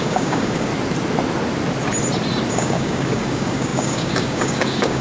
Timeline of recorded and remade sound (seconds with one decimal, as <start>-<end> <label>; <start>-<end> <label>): 0.0-0.7 remade; 0.7-2.5 recorded; 2.5-5.0 remade